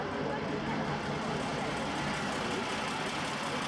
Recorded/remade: recorded